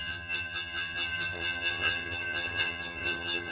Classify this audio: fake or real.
fake